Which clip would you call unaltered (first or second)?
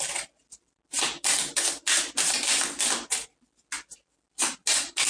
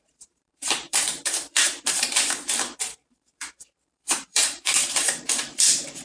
first